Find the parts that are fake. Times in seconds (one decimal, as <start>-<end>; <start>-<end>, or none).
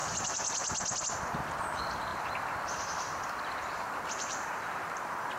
2.1-5.4